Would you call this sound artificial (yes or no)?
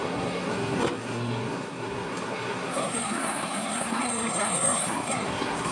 yes